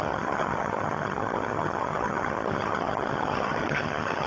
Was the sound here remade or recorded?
remade